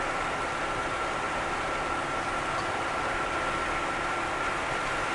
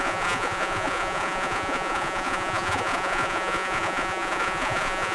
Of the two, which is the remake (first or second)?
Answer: second